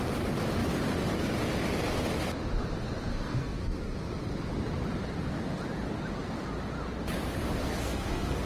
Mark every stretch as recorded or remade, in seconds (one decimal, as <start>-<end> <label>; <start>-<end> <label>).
0.0-3.1 recorded; 3.1-3.8 remade; 3.8-7.6 recorded; 7.6-8.5 remade